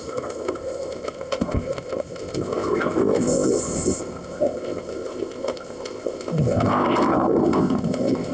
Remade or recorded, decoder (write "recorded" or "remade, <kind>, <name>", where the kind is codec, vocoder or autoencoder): remade, codec, ZipCodec